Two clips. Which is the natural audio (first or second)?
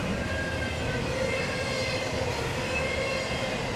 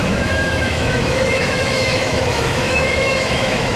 first